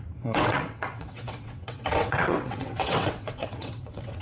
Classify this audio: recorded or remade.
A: remade